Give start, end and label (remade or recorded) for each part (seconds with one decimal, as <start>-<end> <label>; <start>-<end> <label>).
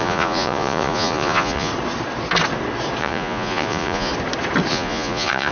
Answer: 0.0-1.7 remade; 1.7-3.0 recorded; 3.0-4.1 remade; 4.1-4.7 recorded; 4.7-5.5 remade